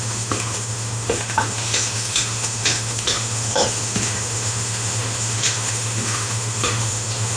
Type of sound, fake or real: fake